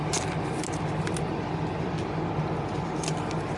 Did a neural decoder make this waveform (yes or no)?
no